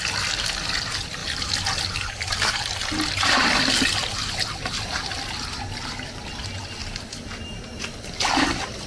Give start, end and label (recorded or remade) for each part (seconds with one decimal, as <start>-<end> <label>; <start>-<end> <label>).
0.0-8.9 recorded